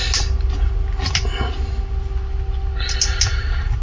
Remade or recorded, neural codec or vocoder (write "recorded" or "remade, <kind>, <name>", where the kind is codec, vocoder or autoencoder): recorded